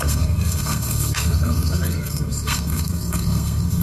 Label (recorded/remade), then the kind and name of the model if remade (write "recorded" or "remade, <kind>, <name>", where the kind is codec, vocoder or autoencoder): remade, codec, SNAC